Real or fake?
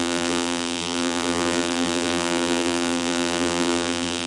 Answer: fake